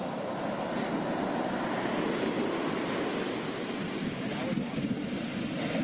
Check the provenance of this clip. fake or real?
real